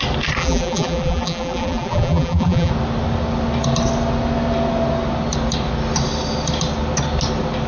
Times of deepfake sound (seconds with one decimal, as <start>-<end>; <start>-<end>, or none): 0.4-2.7